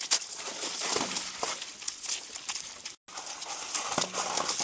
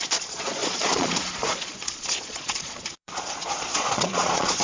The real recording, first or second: first